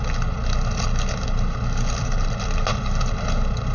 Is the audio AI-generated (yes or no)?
no